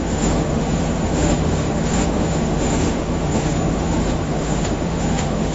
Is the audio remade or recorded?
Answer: remade